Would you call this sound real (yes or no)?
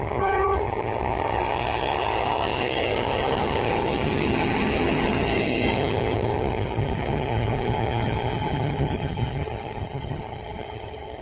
no